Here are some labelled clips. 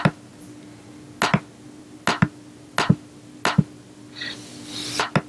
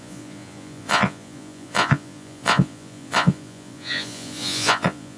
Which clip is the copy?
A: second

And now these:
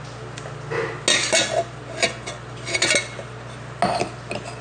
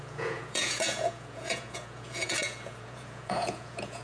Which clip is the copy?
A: second